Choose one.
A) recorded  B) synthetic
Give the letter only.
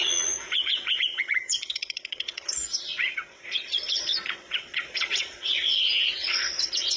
B